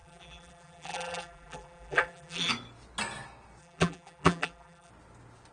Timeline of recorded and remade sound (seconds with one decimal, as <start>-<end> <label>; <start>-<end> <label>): 0.0-2.5 remade; 2.5-3.6 recorded; 3.6-4.9 remade; 4.9-5.5 recorded